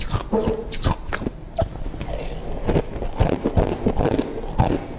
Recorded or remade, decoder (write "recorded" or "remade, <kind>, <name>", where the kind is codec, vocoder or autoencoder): recorded